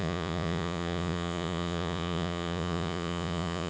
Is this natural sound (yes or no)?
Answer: no